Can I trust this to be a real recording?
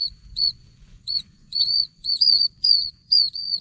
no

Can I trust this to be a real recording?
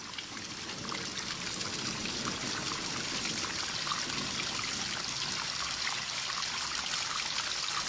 yes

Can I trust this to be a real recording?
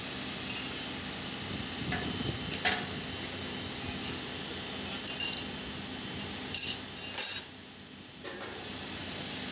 yes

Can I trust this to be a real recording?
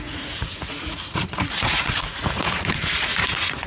no